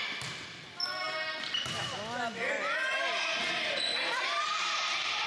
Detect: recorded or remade recorded